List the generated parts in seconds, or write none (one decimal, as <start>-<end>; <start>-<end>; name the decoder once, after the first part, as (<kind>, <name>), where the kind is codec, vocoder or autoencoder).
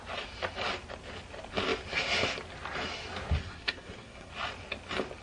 3.4-4.3 (codec, SNAC)